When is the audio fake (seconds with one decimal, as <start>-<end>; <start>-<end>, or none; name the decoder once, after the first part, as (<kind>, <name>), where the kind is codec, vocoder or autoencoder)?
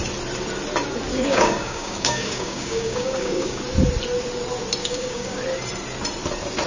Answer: 1.1-3.6 (codec, DAC); 4.8-5.4